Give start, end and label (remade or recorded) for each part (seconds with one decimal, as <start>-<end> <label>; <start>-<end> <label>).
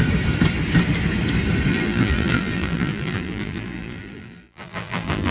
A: 0.0-1.7 recorded; 1.7-5.3 remade